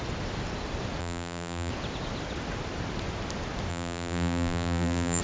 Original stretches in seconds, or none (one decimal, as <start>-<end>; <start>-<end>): 0.0-1.0; 1.7-3.7